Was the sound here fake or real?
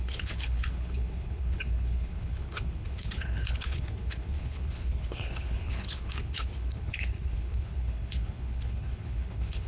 fake